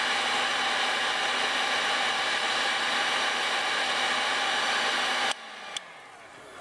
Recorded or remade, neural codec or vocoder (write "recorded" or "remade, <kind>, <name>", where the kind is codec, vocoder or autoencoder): recorded